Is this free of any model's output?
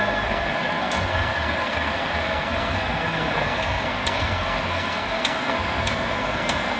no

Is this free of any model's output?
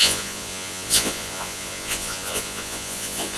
no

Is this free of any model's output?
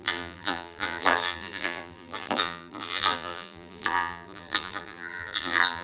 no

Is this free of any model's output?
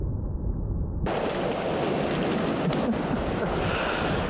yes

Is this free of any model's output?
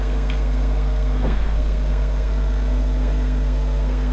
no